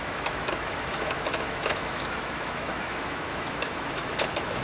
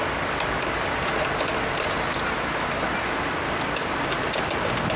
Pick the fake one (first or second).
first